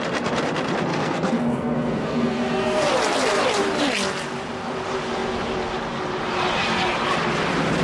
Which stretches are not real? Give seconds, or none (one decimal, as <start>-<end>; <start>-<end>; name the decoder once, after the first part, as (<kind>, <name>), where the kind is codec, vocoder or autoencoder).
0.9-2.8 (codec, SNAC)